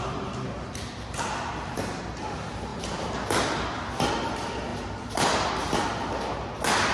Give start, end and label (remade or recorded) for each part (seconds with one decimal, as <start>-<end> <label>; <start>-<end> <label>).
0.0-2.7 recorded; 2.7-4.3 remade; 4.3-4.7 recorded; 4.7-5.5 remade; 5.5-6.9 recorded